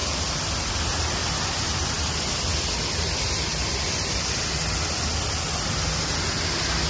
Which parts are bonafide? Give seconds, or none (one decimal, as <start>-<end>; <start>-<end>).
0.0-6.9